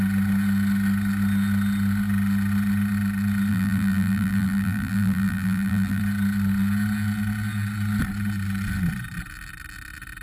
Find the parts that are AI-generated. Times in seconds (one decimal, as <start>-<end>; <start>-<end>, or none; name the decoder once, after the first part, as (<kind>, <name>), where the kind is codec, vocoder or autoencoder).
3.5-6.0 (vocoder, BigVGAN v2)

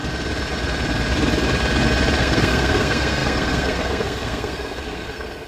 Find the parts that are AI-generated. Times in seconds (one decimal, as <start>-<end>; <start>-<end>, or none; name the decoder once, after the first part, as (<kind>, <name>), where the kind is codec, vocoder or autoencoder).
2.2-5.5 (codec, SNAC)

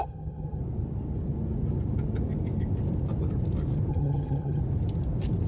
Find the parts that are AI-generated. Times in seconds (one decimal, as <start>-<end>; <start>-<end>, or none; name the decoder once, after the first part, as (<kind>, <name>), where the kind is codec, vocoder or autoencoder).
0.0-0.6 (vocoder, HiFi-GAN); 3.9-4.6

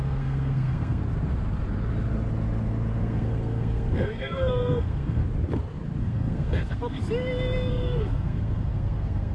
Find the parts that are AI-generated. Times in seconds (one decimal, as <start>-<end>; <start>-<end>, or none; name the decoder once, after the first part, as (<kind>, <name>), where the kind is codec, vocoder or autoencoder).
0.0-1.0 (codec, SNAC); 3.0-5.2; 6.0-7.0; 7.7-9.3

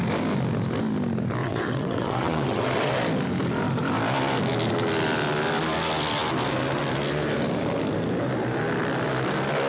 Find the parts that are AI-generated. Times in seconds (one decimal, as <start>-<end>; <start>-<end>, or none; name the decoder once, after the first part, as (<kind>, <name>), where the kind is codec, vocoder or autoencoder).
1.4-2.9 (vocoder, WaveNeXt)

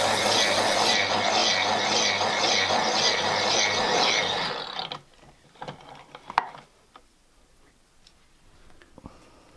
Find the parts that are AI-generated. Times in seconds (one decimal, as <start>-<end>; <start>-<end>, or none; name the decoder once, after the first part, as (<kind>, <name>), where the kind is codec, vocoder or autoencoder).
none